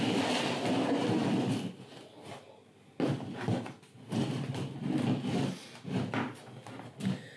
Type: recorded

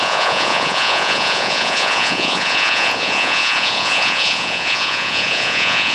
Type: remade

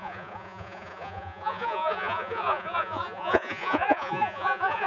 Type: remade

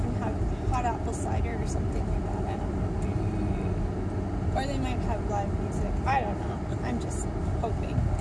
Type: recorded